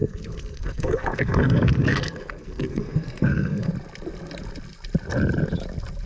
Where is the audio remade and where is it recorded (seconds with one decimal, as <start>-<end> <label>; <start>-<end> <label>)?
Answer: 0.0-3.7 remade; 3.7-6.1 recorded